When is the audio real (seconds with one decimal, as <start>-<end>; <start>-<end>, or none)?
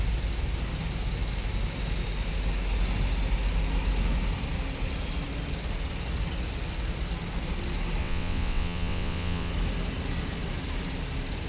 0.0-8.0; 9.5-11.5